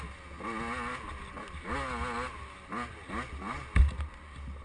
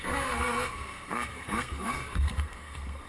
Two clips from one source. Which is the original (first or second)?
first